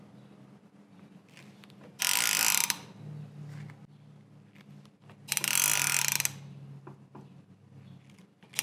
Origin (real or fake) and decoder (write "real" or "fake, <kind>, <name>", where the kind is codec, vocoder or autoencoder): real